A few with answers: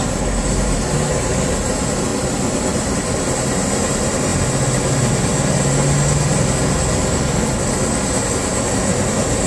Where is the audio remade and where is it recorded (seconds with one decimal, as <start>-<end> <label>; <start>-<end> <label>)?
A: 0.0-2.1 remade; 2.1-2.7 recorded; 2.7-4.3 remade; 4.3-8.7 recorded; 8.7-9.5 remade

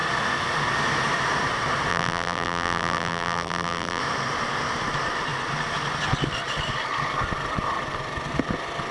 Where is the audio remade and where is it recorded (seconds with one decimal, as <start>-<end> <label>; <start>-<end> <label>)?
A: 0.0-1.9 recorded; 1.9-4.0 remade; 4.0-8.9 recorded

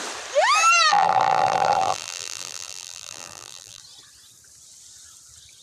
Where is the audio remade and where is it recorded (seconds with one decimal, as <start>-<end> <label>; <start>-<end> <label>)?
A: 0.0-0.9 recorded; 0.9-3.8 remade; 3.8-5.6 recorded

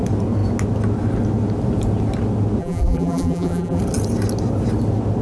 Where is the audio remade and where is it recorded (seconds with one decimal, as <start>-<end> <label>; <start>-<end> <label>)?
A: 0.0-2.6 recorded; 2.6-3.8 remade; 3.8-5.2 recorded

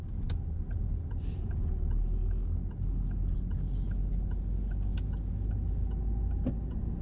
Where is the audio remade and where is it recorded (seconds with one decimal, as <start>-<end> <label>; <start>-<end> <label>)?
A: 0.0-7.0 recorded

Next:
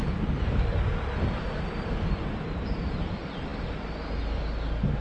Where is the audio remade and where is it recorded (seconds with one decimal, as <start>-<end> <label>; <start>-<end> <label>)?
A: 0.0-5.0 recorded

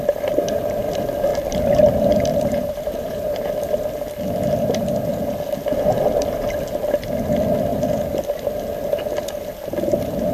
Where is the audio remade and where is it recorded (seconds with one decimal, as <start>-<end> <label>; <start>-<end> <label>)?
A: 0.0-2.3 recorded; 2.3-3.2 remade; 3.2-10.3 recorded

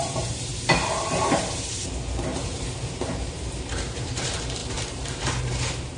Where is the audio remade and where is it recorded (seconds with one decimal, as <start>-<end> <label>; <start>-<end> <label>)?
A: 0.0-0.5 remade; 0.5-1.2 recorded; 1.2-6.0 remade